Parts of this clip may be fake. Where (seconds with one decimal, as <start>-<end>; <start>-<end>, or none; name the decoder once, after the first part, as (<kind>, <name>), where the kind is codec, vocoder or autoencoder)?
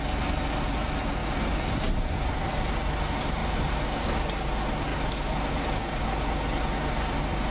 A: none